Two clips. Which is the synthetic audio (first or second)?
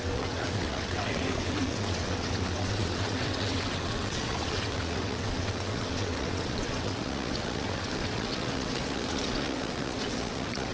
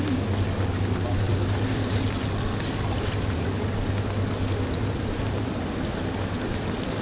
first